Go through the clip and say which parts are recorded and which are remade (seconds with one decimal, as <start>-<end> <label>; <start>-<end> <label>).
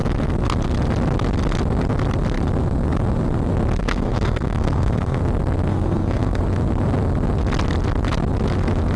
0.0-3.8 recorded; 3.8-5.2 remade; 5.2-5.7 recorded; 5.7-6.4 remade; 6.4-9.0 recorded